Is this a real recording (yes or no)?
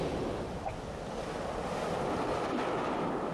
yes